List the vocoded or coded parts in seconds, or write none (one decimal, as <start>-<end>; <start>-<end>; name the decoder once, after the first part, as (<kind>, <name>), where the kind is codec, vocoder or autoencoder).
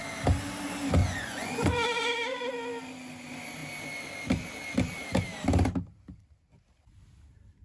1.0-2.5 (vocoder, Vocos)